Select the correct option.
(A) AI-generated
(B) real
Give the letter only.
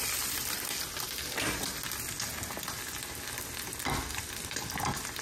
B